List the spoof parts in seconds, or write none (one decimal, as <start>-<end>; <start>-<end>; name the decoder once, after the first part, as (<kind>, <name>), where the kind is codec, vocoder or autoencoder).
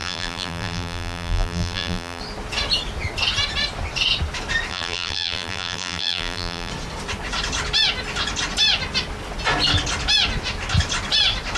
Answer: 0.0-2.2 (vocoder, BigVGAN v2); 4.7-6.7